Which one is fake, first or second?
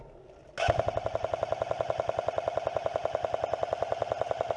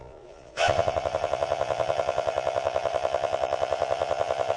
second